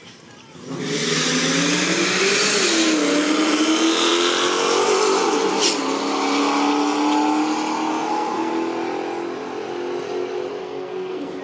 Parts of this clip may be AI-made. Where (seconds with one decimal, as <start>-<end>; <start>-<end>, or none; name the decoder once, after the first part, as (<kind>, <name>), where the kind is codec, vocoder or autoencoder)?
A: 7.9-8.5 (codec, SNAC); 10.6-11.4